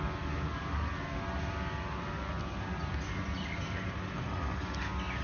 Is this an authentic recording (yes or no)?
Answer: yes